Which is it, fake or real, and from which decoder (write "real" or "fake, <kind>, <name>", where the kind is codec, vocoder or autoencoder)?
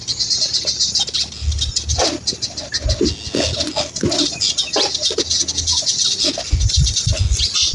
real